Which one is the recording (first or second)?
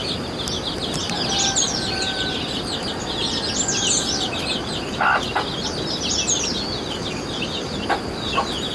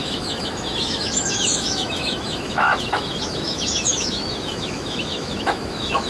first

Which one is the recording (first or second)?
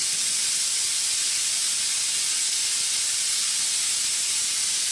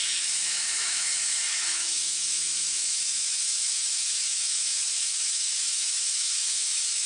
first